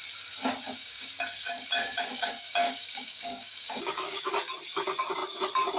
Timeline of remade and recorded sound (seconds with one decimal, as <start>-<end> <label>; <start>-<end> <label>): 0.0-0.8 recorded; 0.8-4.3 remade; 4.3-5.8 recorded